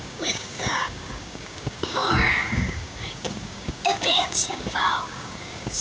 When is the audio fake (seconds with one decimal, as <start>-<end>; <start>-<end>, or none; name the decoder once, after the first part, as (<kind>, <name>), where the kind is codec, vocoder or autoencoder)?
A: 0.0-5.8 (codec, DAC)